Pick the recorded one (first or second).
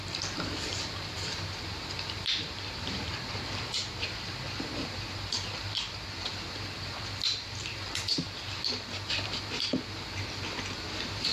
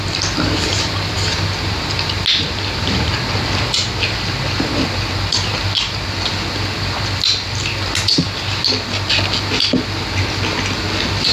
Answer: second